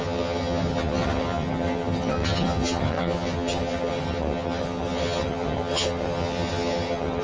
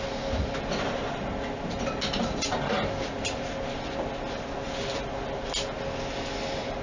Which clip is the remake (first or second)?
first